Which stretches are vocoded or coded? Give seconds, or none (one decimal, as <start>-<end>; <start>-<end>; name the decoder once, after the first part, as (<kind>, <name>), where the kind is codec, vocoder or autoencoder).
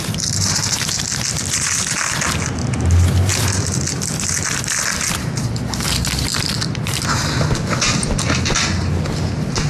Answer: none